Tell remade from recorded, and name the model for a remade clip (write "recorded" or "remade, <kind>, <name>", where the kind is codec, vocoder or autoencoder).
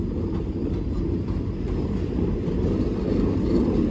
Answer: remade, vocoder, BigVGAN v2